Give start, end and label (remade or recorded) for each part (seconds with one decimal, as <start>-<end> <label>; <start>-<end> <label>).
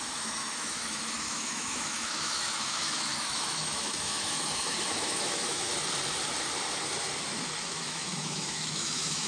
0.0-5.7 remade; 5.7-7.7 recorded; 7.7-9.3 remade